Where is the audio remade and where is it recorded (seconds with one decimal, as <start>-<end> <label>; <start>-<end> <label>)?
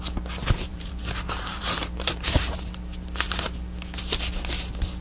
0.0-0.7 recorded; 0.7-2.7 remade; 2.7-5.0 recorded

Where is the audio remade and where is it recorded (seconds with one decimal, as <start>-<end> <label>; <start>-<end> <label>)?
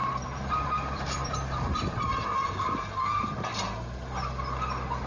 0.0-0.5 recorded; 0.5-3.5 remade; 3.5-5.1 recorded